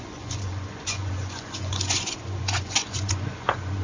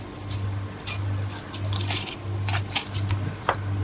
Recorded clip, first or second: second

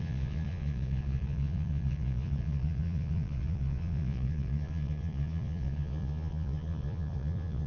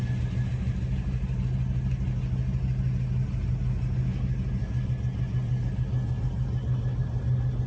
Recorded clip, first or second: second